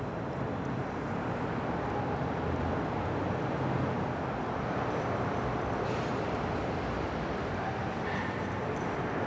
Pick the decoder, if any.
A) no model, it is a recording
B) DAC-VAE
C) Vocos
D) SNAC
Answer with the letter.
A